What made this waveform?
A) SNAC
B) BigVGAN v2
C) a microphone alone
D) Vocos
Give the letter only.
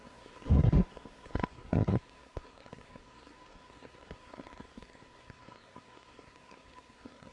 A